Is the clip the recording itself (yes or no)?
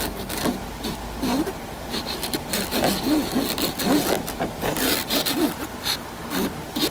yes